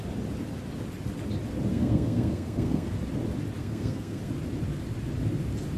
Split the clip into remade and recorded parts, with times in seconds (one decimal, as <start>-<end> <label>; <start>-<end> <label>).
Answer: 0.0-1.7 recorded; 1.7-2.9 remade; 2.9-3.6 recorded; 3.6-4.3 remade; 4.3-5.8 recorded